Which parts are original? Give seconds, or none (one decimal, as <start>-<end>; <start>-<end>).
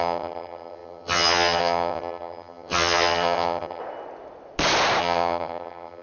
3.8-5.0